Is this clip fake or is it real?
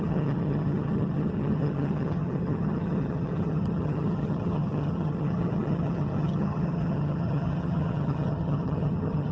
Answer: fake